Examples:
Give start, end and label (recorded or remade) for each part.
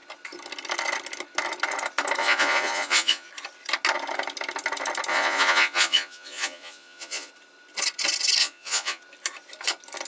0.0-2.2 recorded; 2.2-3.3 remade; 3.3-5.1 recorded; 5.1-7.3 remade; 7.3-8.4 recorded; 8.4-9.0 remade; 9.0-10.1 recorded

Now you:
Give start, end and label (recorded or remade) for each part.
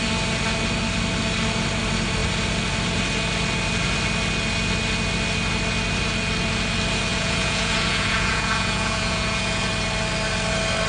0.0-7.1 recorded; 7.1-9.7 remade; 9.7-10.9 recorded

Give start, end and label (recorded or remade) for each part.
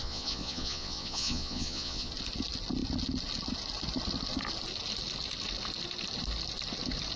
0.0-2.1 remade; 2.1-7.2 recorded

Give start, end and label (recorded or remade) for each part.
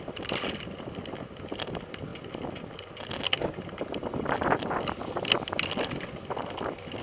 0.0-7.0 recorded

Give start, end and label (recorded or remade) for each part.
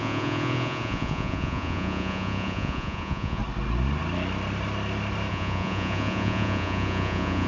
0.0-3.4 remade; 3.4-5.3 recorded; 5.3-7.5 remade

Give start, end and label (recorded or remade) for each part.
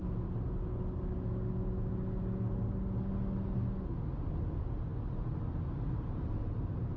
0.0-7.0 recorded